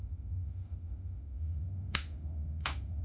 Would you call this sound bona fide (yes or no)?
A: no